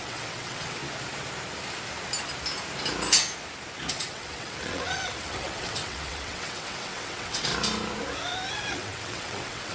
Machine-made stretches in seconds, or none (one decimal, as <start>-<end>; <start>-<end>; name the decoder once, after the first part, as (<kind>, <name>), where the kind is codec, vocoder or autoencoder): 0.0-0.8 (vocoder, WaveNeXt); 3.9-7.5; 8.5-9.7